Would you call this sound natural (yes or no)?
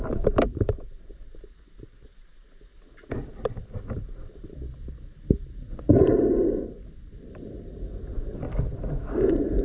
no